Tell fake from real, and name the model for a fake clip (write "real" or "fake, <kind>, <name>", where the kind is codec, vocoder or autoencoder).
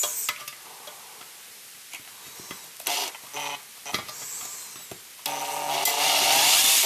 real